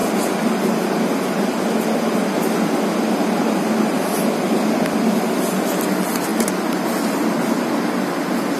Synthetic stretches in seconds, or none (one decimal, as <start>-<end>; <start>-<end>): none